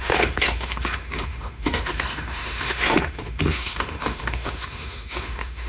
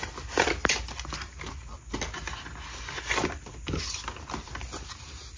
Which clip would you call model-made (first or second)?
first